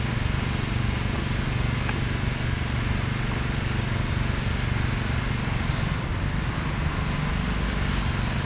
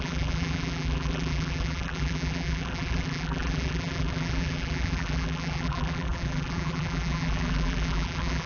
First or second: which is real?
first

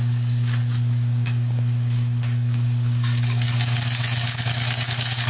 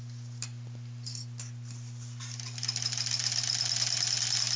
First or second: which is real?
second